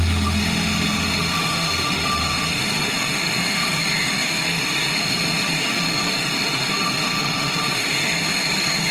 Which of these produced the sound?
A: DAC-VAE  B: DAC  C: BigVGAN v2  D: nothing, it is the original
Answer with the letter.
A